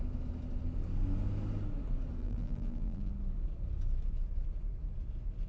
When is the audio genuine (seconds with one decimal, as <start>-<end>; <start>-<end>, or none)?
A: 0.0-2.2; 3.1-5.5